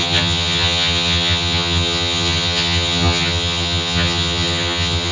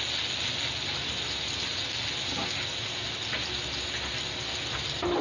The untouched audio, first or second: second